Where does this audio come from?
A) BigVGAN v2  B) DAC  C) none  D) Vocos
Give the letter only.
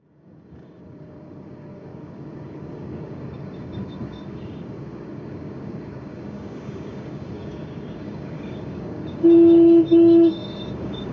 B